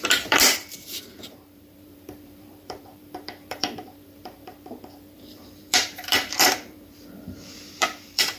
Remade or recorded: remade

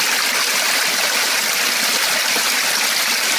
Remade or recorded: recorded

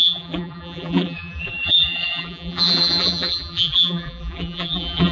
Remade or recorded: remade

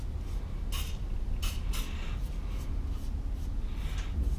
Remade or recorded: recorded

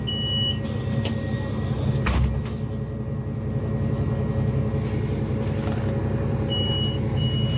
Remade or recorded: recorded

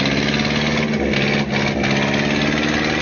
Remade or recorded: recorded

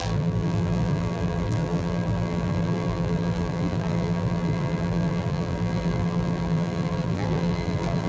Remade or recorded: remade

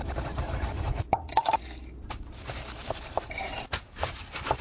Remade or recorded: remade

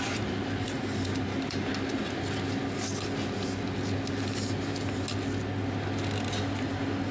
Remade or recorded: recorded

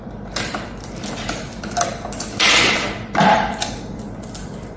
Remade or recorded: remade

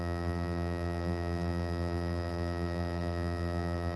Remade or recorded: remade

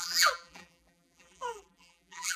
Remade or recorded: remade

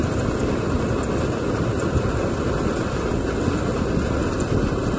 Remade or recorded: recorded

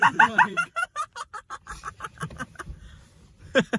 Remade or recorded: remade